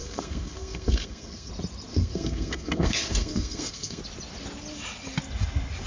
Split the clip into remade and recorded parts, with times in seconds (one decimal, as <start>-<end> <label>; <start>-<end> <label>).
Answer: 0.0-1.5 remade; 1.5-1.9 recorded; 1.9-4.0 remade; 4.0-5.9 recorded